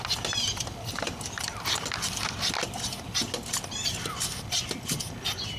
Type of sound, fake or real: real